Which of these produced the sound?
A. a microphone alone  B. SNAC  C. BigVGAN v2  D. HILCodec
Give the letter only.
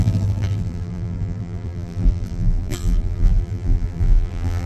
C